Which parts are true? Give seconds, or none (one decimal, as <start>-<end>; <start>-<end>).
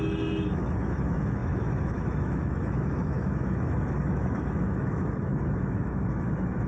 none